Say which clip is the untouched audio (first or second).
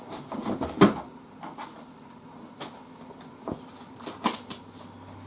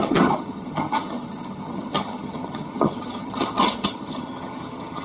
first